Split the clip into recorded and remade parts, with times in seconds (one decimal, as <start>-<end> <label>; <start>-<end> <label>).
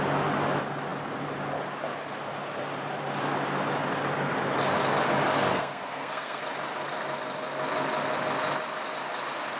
0.0-5.5 recorded; 5.5-6.4 remade; 6.4-9.6 recorded